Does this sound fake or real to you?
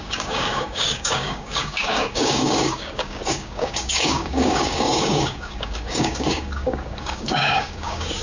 fake